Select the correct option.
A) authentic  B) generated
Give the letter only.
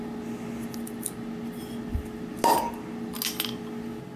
A